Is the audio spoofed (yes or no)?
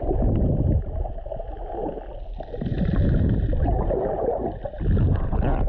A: no